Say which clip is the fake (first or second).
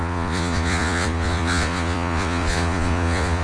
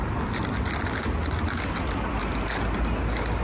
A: first